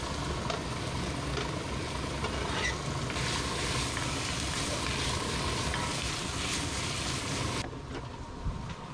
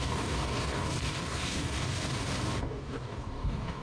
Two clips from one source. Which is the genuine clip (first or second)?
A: first